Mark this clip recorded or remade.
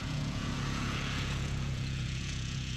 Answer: remade